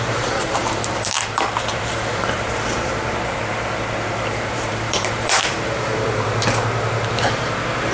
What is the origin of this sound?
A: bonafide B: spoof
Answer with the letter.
B